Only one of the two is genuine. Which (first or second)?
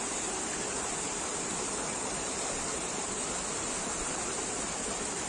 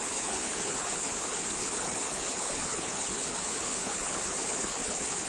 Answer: first